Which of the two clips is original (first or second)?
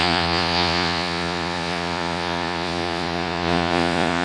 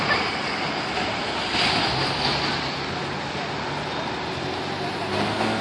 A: second